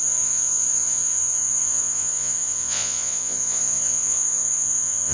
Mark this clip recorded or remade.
remade